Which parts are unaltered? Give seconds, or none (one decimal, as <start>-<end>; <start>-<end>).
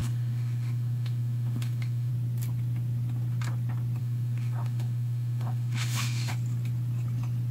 2.1-4.0; 6.3-7.5